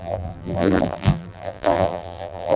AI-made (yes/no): yes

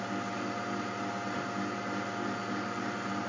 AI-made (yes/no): no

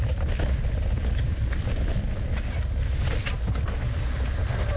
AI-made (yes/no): no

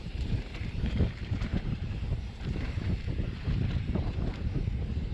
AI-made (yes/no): yes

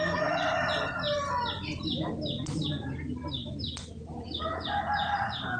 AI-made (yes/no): no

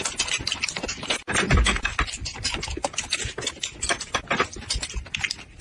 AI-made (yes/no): no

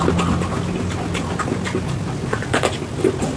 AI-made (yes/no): no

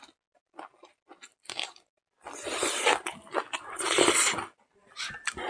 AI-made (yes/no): no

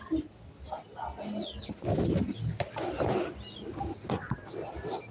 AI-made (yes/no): no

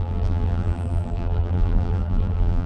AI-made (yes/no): yes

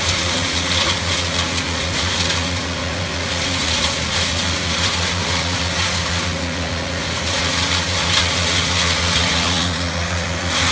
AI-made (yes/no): yes